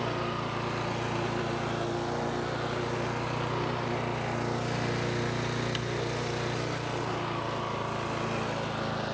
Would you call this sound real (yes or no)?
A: yes